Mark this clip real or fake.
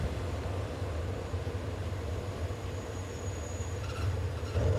fake